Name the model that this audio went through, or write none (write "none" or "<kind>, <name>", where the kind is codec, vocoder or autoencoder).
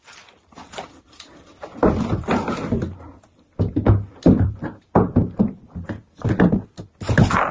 none